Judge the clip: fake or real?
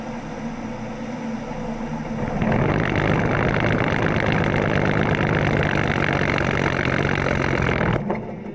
real